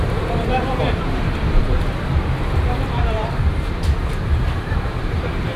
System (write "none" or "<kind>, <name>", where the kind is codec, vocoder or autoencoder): vocoder, BigVGAN v2